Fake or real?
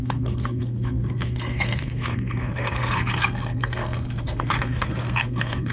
fake